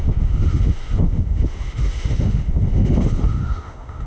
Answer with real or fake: fake